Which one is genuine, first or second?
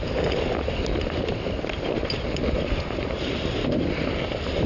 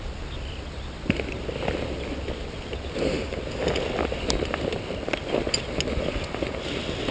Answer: second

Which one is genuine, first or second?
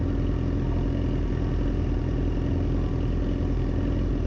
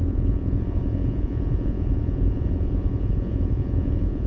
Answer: first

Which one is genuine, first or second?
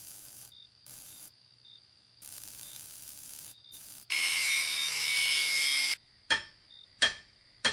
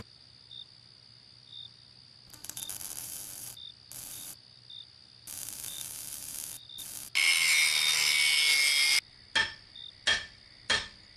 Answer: second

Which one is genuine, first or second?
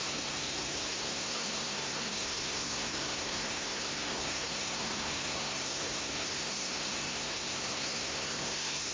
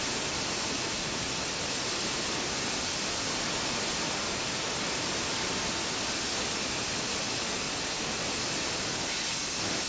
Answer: second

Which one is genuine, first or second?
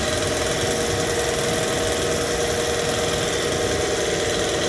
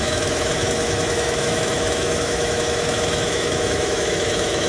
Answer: first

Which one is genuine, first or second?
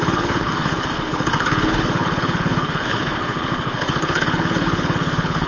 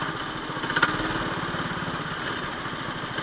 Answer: second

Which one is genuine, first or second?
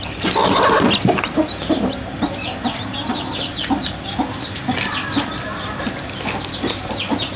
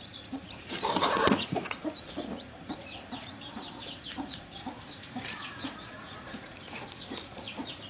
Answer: first